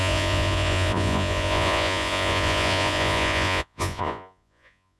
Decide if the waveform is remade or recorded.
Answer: remade